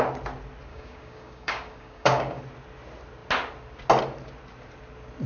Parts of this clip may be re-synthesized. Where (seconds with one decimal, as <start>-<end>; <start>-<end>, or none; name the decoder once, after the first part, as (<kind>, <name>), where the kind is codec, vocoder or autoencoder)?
0.7-2.4 (codec, DAC)